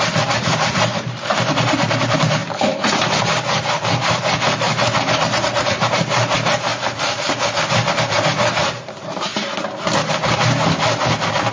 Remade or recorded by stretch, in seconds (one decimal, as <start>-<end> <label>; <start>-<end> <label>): 0.0-6.7 remade; 6.7-7.9 recorded; 7.9-9.3 remade; 9.3-11.5 recorded